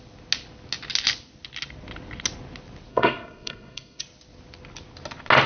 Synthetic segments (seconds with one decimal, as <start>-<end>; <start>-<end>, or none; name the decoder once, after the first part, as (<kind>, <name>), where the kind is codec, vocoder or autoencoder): 2.9-4.0 (codec, SNAC)